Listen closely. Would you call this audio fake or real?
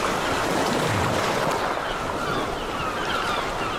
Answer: real